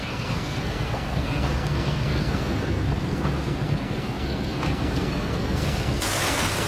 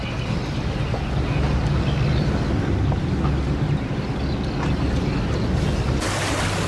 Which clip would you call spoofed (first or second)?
first